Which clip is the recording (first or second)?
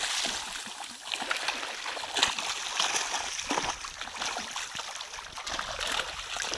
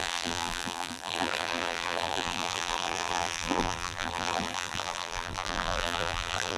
first